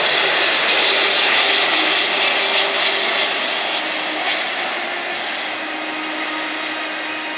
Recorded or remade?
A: recorded